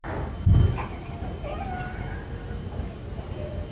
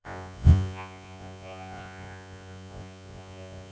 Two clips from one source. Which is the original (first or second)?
first